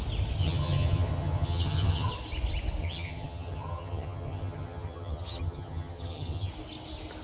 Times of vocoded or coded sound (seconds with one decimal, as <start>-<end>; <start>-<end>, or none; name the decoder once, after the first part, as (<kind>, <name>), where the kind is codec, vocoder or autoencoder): 0.4-2.1 (vocoder, HiFi-GAN); 2.8-6.5